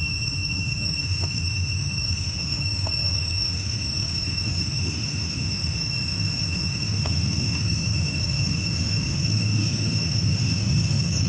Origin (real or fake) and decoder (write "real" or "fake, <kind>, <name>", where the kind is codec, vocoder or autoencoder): fake, autoencoder, DAC-VAE